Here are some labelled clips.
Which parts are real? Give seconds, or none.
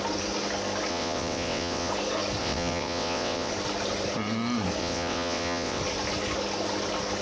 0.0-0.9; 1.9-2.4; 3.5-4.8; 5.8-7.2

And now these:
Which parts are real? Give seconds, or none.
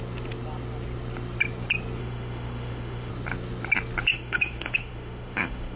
0.0-2.0; 3.1-4.1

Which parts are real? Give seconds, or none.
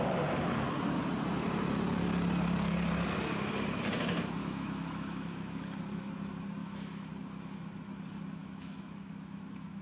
0.0-4.4; 5.6-6.6; 7.1-8.4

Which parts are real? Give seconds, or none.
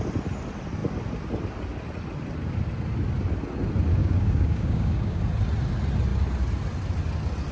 0.0-4.0; 5.2-7.5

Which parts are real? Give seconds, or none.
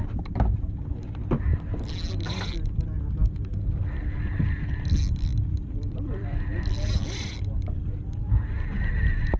0.0-5.3; 8.3-9.4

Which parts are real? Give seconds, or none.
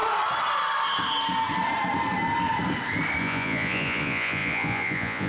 0.0-3.2